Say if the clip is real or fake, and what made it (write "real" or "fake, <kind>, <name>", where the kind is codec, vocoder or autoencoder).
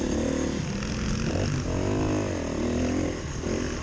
real